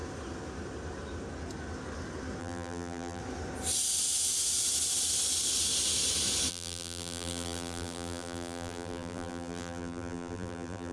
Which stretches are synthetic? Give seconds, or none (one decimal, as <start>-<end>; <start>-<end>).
2.4-3.2; 6.5-10.9